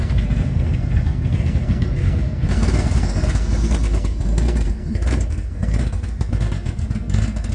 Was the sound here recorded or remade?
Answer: remade